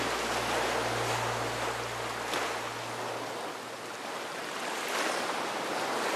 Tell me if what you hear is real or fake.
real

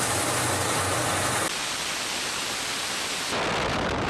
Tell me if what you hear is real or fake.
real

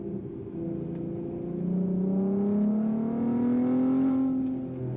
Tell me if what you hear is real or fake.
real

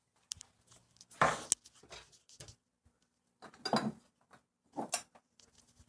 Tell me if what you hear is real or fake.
real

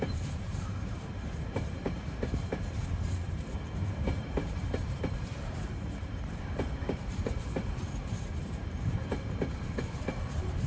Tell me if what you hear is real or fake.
fake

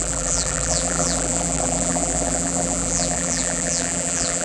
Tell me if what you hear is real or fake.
fake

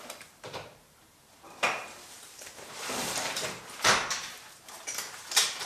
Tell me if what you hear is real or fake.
fake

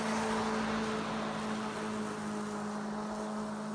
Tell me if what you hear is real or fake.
real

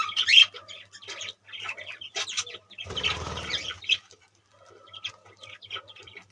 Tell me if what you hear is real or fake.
fake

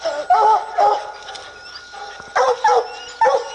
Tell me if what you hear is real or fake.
real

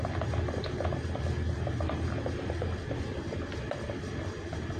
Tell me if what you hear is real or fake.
real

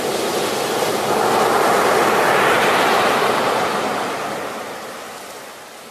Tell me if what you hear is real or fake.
real